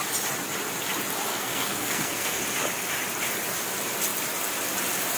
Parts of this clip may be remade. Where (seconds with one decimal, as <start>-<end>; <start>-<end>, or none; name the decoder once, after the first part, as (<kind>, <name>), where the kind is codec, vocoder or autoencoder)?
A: 1.3-2.4 (codec, SNAC)

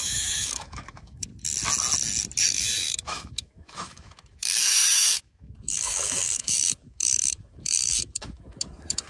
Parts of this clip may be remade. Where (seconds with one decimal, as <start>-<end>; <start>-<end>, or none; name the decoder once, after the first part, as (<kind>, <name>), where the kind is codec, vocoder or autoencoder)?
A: 0.0-1.3 (autoencoder, DAC-VAE); 2.4-9.1

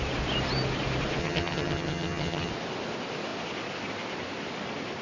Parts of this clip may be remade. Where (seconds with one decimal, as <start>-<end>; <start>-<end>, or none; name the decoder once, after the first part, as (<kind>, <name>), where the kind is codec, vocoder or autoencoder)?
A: 1.2-2.5 (vocoder, HiFi-GAN)

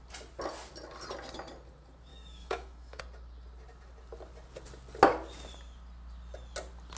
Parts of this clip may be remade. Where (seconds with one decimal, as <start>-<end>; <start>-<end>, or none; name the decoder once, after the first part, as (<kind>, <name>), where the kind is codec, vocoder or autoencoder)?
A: 2.1-3.0 (autoencoder, DAC-VAE)

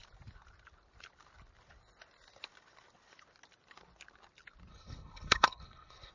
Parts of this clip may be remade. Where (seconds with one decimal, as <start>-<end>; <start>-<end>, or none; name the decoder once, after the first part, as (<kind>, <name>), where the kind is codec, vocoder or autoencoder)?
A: 4.7-6.1 (codec, HILCodec)

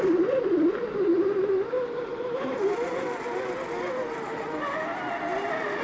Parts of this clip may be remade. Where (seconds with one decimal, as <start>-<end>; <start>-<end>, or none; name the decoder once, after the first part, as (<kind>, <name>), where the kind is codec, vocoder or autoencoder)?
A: none

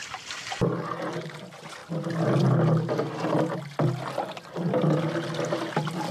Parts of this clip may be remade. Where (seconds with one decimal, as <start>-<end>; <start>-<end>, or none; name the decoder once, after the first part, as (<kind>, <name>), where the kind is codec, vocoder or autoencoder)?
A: none